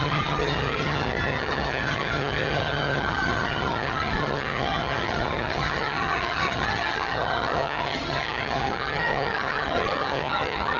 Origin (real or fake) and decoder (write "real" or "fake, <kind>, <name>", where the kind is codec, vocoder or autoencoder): fake, vocoder, HiFi-GAN